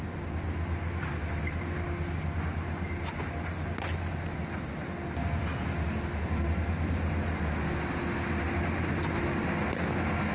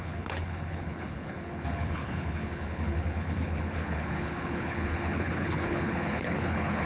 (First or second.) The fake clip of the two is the second